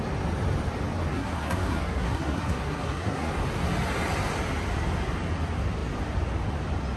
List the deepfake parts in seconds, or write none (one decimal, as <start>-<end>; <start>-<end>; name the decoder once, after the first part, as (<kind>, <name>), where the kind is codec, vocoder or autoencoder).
1.1-3.3 (codec, SNAC)